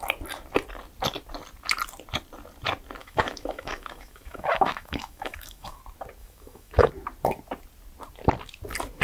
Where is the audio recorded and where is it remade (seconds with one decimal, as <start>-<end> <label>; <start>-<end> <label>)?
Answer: 0.0-3.0 recorded; 3.0-5.8 remade; 5.8-6.2 recorded; 6.2-6.9 remade; 6.9-9.0 recorded